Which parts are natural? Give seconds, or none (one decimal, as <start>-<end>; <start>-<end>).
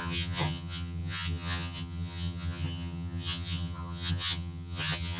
none